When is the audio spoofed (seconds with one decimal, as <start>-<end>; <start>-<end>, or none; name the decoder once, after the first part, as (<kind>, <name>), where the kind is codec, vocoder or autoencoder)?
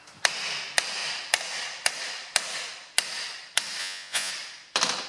3.8-4.3 (vocoder, Vocos)